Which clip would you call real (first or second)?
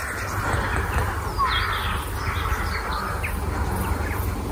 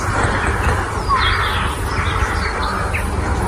first